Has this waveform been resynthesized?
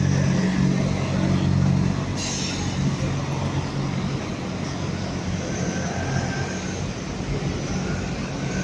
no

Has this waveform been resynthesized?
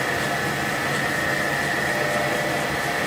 no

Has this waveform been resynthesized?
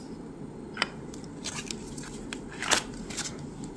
no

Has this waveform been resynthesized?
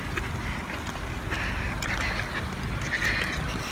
no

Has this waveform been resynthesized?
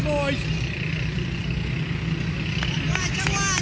no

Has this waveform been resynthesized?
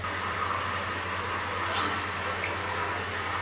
no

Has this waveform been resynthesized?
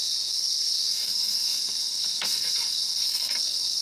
yes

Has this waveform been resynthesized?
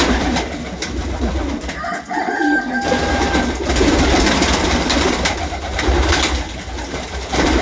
no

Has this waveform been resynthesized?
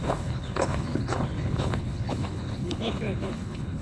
yes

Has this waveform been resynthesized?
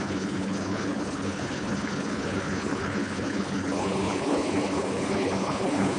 yes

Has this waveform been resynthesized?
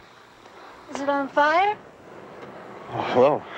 yes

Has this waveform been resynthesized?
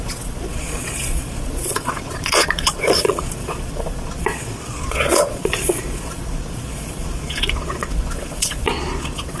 yes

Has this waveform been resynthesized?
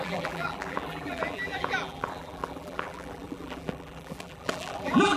yes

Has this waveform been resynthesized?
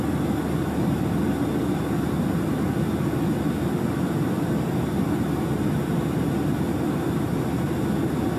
no